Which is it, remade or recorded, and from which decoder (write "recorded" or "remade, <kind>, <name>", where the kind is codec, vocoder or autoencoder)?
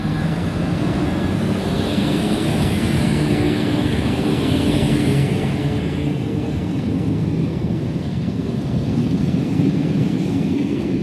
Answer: remade, codec, SNAC